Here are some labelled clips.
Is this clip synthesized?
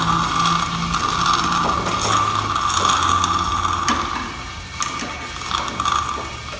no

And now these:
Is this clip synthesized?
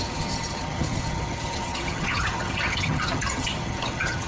yes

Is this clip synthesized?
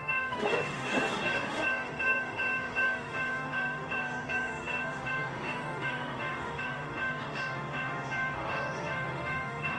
yes